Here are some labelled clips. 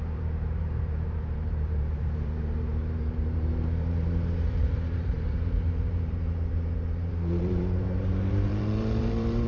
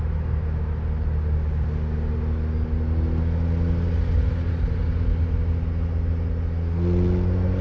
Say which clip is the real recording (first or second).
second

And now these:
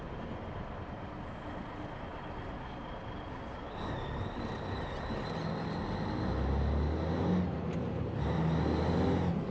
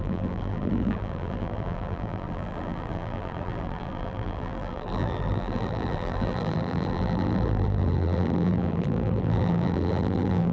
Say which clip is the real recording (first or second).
first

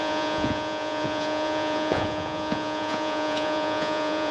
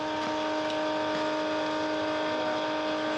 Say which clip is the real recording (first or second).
second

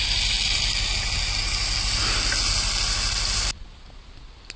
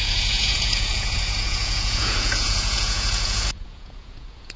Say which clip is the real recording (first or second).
first